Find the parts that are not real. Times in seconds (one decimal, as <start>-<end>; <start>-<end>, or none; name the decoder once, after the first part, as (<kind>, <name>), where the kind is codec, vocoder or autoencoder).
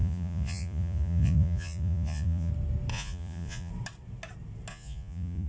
0.0-2.5 (vocoder, Vocos); 2.9-3.7; 4.7-5.5